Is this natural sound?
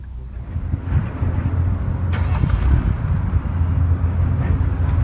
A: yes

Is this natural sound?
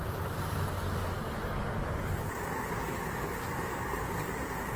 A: no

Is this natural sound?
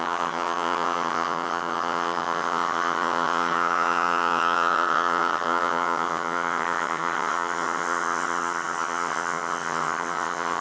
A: no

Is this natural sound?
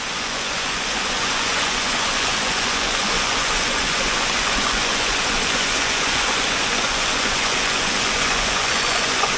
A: no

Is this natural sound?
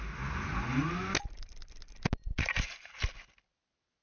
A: yes